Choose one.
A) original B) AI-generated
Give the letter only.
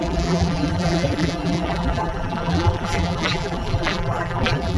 B